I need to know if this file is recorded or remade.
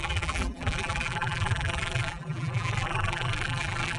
remade